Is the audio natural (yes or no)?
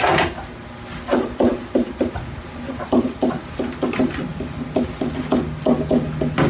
yes